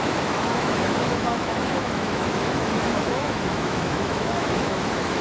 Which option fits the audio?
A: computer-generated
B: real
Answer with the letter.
A